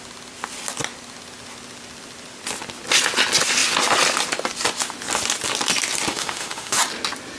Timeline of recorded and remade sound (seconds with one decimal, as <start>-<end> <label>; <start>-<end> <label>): 0.0-6.1 recorded; 6.1-6.8 remade; 6.8-7.4 recorded